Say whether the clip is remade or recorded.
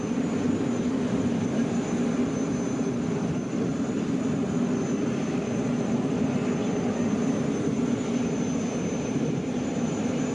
recorded